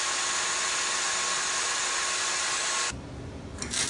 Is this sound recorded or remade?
recorded